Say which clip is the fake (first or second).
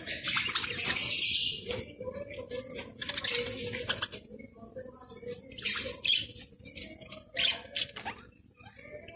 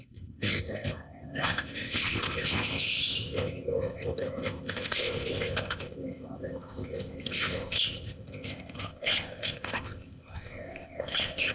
second